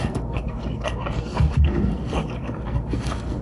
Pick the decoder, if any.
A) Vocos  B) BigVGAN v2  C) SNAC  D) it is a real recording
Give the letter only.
C